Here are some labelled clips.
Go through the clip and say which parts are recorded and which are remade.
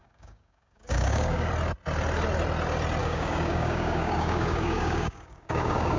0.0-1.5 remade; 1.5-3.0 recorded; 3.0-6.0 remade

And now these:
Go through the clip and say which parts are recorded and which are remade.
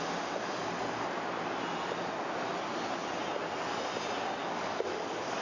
0.0-4.4 recorded; 4.4-5.4 remade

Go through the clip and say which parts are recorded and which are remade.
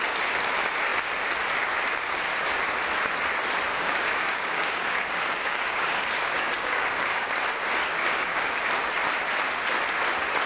0.0-3.7 recorded; 3.7-7.3 remade; 7.3-7.9 recorded; 7.9-8.6 remade; 8.6-10.5 recorded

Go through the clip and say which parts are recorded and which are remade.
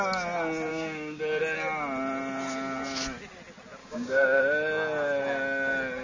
0.0-0.7 recorded; 0.7-1.2 remade; 1.2-3.8 recorded; 3.8-4.4 remade; 4.4-6.0 recorded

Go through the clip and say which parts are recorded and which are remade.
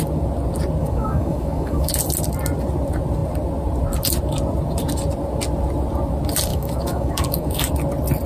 0.0-0.8 recorded; 0.8-1.9 remade; 1.9-6.5 recorded; 6.5-7.7 remade; 7.7-8.3 recorded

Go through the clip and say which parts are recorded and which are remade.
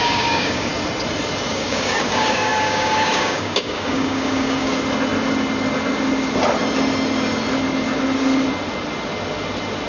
0.0-0.7 remade; 0.7-1.5 recorded; 1.5-4.7 remade; 4.7-9.9 recorded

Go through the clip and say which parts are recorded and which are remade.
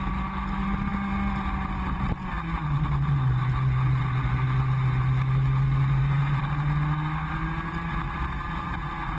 0.0-9.2 recorded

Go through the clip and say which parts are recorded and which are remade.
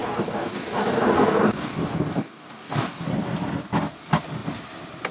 0.0-3.1 remade; 3.1-5.1 recorded